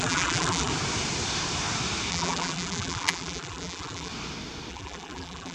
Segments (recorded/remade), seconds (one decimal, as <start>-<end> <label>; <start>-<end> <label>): 0.0-0.7 remade; 0.7-2.1 recorded; 2.1-4.1 remade; 4.1-4.7 recorded; 4.7-5.5 remade